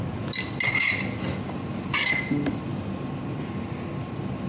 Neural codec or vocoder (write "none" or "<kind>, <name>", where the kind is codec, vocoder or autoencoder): none